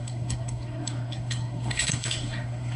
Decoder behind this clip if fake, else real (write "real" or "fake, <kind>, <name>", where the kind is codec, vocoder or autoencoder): fake, codec, SNAC